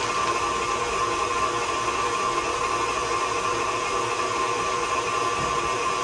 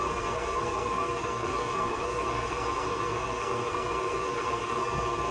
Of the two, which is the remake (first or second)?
second